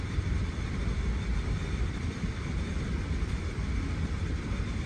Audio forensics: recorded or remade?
remade